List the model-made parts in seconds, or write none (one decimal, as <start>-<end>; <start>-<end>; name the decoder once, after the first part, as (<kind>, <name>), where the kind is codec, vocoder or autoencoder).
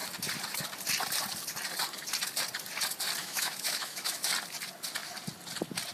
3.2-4.3 (autoencoder, DAC-VAE)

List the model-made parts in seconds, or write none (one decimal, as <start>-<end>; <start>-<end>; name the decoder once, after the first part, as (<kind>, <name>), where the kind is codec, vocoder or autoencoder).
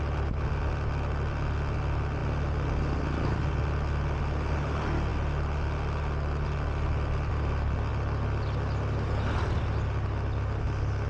none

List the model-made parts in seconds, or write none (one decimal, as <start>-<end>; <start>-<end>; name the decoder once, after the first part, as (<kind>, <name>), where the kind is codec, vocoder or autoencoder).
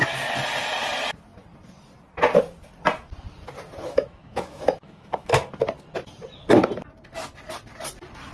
3.8-5.5 (autoencoder, DAC-VAE)